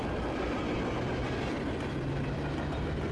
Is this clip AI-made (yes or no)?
yes